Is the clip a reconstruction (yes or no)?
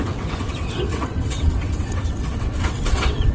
yes